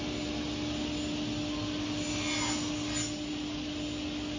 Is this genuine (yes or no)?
yes